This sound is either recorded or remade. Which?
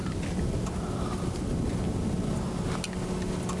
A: recorded